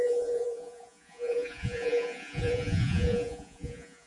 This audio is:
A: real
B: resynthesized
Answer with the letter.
B